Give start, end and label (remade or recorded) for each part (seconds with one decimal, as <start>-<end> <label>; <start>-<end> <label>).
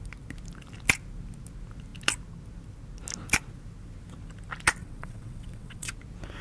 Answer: 0.0-4.8 recorded; 4.8-5.9 remade; 5.9-6.4 recorded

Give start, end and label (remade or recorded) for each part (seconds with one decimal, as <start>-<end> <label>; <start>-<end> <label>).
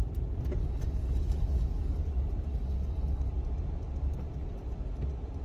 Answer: 0.0-0.6 recorded; 0.6-2.0 remade; 2.0-2.5 recorded; 2.5-3.3 remade; 3.3-5.4 recorded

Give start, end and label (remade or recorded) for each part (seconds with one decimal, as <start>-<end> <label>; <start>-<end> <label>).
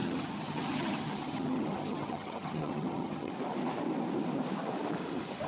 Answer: 0.0-3.3 remade; 3.3-5.5 recorded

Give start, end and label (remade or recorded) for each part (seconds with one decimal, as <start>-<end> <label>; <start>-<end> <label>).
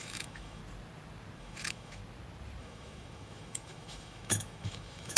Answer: 0.0-0.6 remade; 0.6-1.4 recorded; 1.4-2.0 remade; 2.0-2.6 recorded; 2.6-5.2 remade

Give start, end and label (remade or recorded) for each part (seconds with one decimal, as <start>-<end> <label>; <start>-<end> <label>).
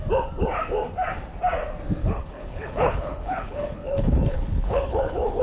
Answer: 0.0-2.0 recorded; 2.0-5.4 remade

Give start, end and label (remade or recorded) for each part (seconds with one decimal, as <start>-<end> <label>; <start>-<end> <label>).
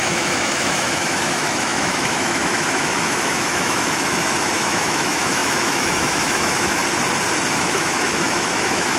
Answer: 0.0-6.8 remade; 6.8-7.5 recorded; 7.5-9.0 remade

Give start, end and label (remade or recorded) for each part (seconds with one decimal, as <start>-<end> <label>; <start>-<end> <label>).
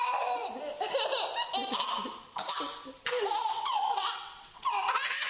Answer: 0.0-3.5 recorded; 3.5-5.3 remade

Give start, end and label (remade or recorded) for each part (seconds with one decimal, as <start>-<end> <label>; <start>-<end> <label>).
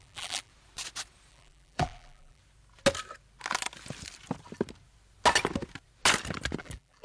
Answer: 0.0-0.5 remade; 0.5-1.3 recorded; 1.3-2.4 remade; 2.4-6.6 recorded; 6.6-7.0 remade